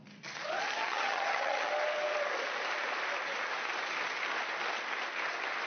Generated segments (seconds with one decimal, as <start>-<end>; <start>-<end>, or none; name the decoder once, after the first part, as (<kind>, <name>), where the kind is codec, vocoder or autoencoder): 0.8-1.7 (vocoder, HiFi-GAN)